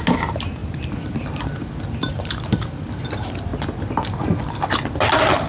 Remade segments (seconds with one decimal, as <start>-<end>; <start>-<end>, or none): 0.6-3.0